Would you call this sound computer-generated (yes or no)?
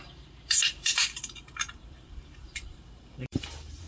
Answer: yes